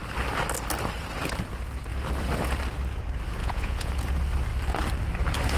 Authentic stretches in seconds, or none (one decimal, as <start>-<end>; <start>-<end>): 0.0-3.4; 3.9-5.6